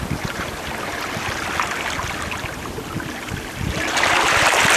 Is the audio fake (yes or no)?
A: no